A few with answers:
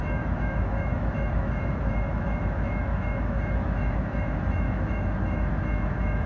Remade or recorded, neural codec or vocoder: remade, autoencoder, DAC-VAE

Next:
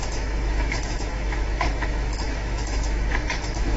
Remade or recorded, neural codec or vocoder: remade, autoencoder, DAC-VAE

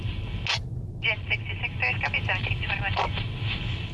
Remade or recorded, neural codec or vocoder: recorded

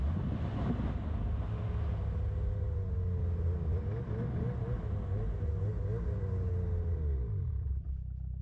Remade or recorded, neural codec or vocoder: recorded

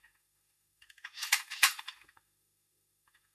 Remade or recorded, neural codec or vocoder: remade, autoencoder, DAC-VAE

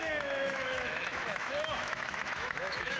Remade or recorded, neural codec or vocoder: remade, autoencoder, DAC-VAE